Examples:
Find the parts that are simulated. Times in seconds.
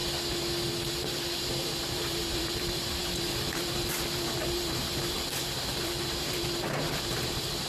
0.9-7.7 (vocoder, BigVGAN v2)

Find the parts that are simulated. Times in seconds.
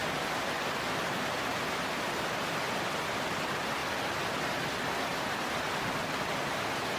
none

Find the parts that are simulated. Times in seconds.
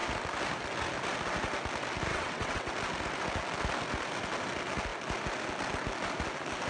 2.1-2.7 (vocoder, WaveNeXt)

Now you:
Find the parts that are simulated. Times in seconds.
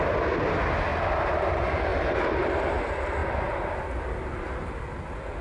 0.9-1.5 (vocoder, BigVGAN v2); 1.9-2.7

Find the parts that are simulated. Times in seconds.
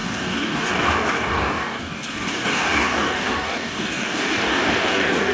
0.0-5.3 (codec, DAC)